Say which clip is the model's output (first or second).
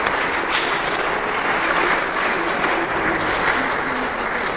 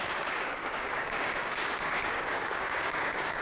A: second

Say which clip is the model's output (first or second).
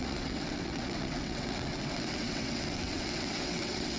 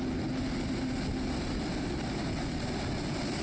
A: first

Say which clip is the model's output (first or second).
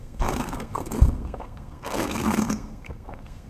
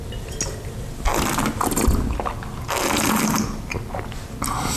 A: first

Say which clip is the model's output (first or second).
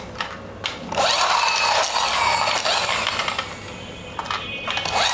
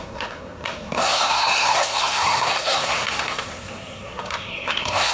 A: second